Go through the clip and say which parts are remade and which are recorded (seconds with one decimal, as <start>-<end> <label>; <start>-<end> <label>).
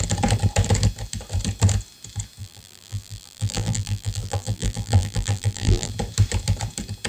0.0-2.4 recorded; 2.4-5.9 remade; 5.9-7.1 recorded